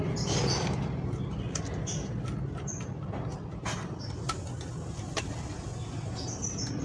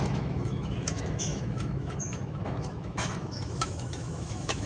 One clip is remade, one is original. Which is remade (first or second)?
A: second